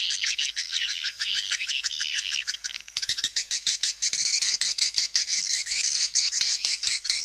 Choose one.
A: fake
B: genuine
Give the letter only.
A